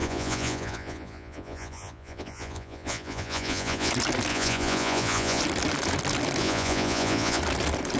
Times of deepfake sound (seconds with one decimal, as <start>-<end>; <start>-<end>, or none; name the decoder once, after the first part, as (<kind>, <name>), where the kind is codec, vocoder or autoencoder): 0.0-3.9 (vocoder, Vocos); 4.3-5.4; 6.4-7.4